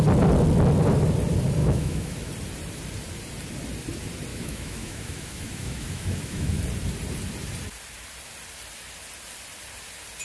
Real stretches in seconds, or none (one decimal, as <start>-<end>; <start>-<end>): 0.0-1.6; 2.3-4.3; 6.6-10.2